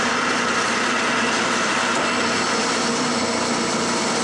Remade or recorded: remade